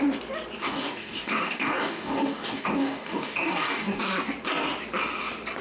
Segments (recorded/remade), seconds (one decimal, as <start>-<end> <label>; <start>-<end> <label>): 0.0-0.6 recorded; 0.6-4.0 remade; 4.0-5.6 recorded